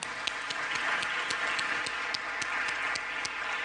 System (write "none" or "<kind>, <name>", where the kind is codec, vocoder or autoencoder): none